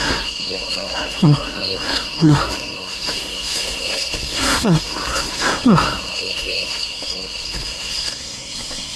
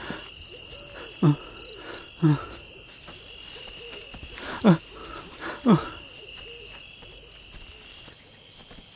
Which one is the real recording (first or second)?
second